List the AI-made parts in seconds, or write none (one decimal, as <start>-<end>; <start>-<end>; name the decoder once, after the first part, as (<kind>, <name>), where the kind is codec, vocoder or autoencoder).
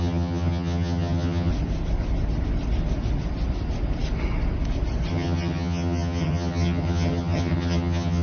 0.0-1.5 (vocoder, HiFi-GAN); 5.1-8.2